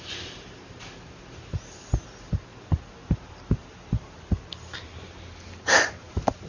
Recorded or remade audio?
recorded